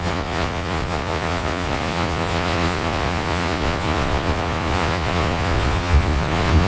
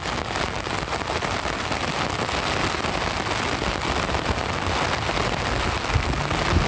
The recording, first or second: second